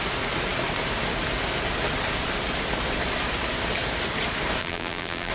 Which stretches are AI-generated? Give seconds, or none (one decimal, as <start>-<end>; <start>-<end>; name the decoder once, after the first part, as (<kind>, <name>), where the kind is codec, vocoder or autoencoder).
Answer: 4.6-5.3 (vocoder, BigVGAN v2)